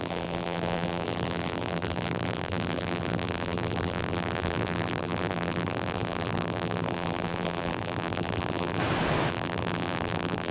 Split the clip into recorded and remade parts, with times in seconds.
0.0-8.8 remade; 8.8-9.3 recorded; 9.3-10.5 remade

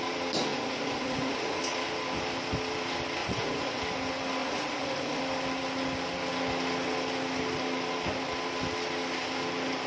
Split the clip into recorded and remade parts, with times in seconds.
0.0-0.5 recorded; 0.5-1.6 remade; 1.6-3.2 recorded; 3.2-3.8 remade; 3.8-4.4 recorded; 4.4-5.2 remade; 5.2-9.9 recorded

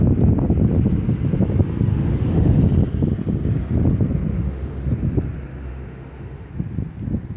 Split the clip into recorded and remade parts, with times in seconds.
0.0-1.9 recorded; 1.9-2.6 remade; 2.6-4.3 recorded; 4.3-4.9 remade; 4.9-5.7 recorded; 5.7-6.5 remade; 6.5-7.4 recorded

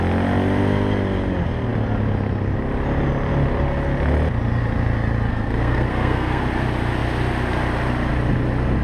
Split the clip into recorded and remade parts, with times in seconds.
0.0-5.3 recorded; 5.3-6.4 remade; 6.4-8.8 recorded

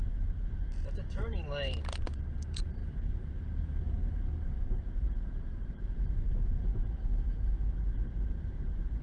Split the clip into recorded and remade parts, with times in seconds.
0.0-9.0 remade

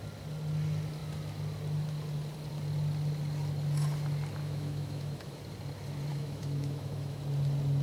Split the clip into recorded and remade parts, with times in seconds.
0.0-4.4 recorded; 4.4-5.4 remade; 5.4-6.1 recorded; 6.1-7.2 remade; 7.2-7.8 recorded

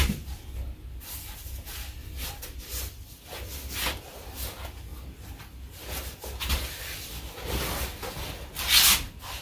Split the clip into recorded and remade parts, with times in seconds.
0.0-9.4 recorded

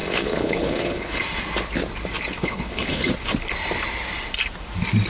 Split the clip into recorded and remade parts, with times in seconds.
0.0-1.2 remade; 1.2-2.4 recorded; 2.4-3.1 remade; 3.1-5.1 recorded